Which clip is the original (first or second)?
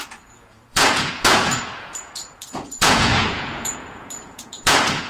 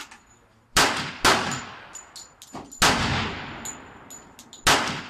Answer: second